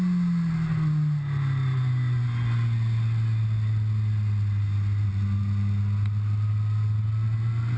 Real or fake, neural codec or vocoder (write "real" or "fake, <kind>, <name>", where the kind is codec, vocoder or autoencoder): real